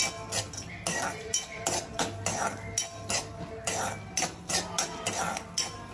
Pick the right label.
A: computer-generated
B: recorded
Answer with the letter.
B